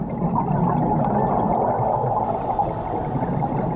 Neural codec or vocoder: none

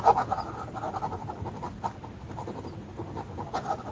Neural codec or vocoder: none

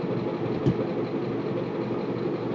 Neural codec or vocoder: none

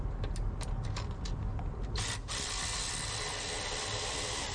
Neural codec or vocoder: none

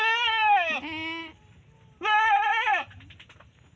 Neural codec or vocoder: none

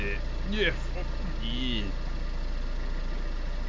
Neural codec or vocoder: none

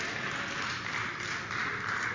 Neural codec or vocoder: none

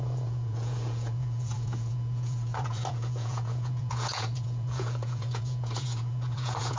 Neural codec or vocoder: vocoder, Vocos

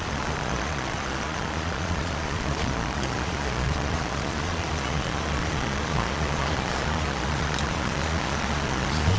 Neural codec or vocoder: vocoder, Vocos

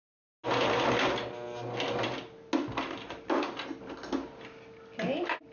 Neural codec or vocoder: none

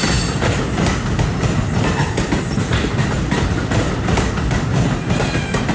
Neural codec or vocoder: none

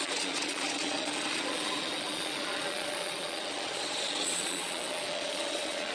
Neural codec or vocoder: vocoder, Vocos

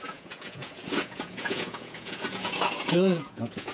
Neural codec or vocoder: vocoder, Vocos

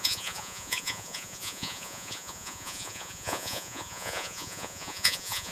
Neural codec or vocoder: vocoder, Vocos